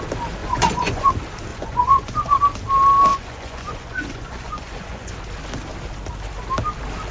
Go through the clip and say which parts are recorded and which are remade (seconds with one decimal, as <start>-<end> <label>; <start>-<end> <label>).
0.0-0.4 recorded; 0.4-1.1 remade; 1.1-1.5 recorded; 1.5-2.4 remade; 2.4-3.1 recorded; 3.1-5.1 remade; 5.1-7.1 recorded